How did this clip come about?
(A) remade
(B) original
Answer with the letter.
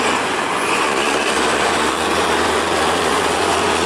A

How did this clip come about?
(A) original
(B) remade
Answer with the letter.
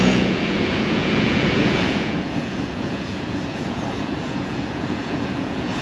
B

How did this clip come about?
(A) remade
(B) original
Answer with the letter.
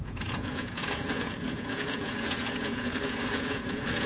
A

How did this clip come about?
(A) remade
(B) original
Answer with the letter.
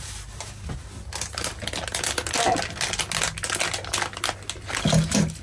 B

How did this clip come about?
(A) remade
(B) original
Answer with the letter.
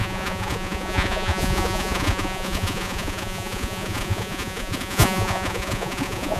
A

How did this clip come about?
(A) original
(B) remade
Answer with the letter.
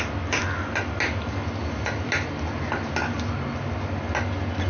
A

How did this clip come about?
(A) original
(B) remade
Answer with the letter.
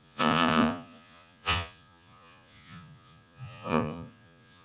B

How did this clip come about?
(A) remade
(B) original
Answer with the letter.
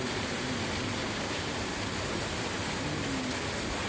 B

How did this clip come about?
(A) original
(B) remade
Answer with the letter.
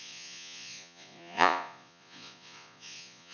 B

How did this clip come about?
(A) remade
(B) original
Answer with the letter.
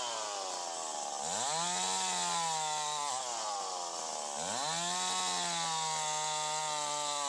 B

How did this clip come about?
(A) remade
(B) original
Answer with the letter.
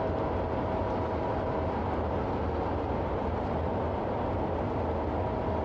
B